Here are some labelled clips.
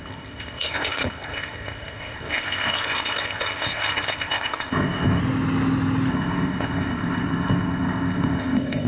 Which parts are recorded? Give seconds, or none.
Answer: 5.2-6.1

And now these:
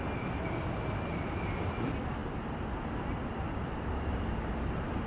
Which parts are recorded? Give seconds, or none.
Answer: 0.0-3.6; 4.6-5.1